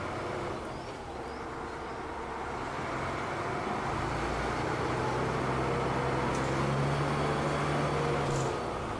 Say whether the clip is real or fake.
real